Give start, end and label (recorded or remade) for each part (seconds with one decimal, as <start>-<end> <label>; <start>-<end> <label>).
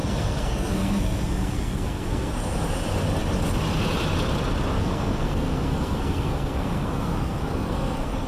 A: 0.0-2.3 remade; 2.3-4.8 recorded; 4.8-8.3 remade